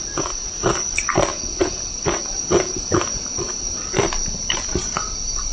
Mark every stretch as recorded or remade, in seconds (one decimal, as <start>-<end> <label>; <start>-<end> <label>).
0.0-5.5 recorded